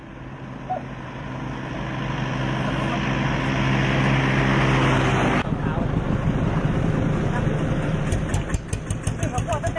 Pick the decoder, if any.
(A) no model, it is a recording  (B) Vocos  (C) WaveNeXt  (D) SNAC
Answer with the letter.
A